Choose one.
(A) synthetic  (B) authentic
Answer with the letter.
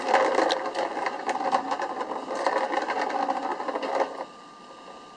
B